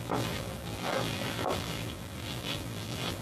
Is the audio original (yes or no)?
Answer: no